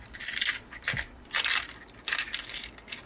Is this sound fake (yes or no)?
no